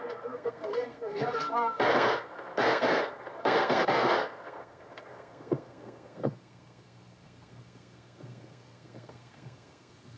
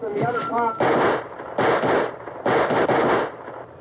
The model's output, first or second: first